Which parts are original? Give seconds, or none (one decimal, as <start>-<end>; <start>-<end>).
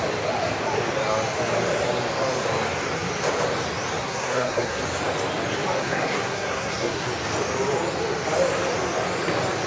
0.0-4.0; 4.8-5.8; 7.1-9.7